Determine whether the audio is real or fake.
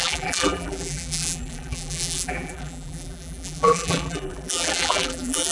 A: fake